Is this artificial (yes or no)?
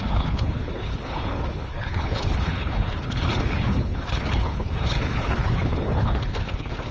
yes